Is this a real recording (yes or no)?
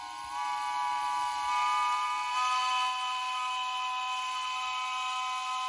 yes